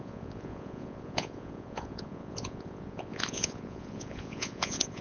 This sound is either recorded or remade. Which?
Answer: remade